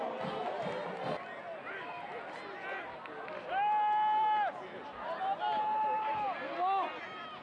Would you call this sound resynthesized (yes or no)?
no